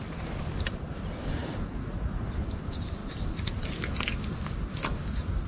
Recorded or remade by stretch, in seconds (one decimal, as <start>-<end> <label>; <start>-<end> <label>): 0.0-1.4 recorded; 1.4-2.2 remade; 2.2-5.5 recorded